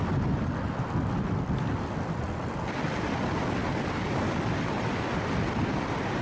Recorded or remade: recorded